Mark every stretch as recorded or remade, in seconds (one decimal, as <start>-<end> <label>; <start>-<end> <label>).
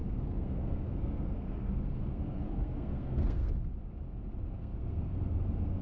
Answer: 0.0-3.5 remade; 3.5-4.6 recorded; 4.6-5.8 remade